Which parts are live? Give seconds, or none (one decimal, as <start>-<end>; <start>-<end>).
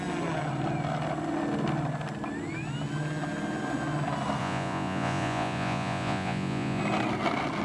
0.0-4.4; 6.8-7.6